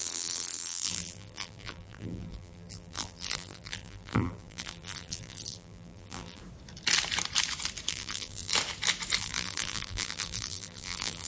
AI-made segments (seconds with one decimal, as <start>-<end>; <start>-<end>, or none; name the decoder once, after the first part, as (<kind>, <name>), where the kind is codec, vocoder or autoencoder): 0.0-6.4 (vocoder, BigVGAN v2); 7.9-8.5; 9.2-11.3

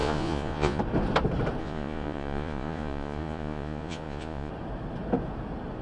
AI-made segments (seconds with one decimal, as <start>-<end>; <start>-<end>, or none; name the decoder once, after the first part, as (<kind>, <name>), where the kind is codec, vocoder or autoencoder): 0.0-0.8 (vocoder, Vocos); 1.6-4.5

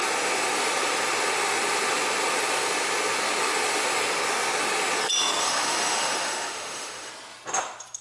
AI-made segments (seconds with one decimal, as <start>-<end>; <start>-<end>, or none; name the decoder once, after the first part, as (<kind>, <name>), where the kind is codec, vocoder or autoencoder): 5.4-7.1 (autoencoder, DAC-VAE)

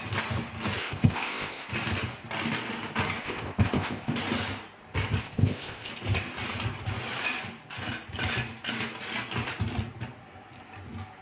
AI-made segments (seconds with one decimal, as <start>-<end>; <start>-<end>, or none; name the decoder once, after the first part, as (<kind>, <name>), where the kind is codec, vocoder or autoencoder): 0.8-1.7 (codec, ZipCodec); 3.2-4.1; 5.2-5.9